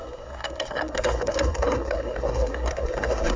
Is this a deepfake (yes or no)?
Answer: yes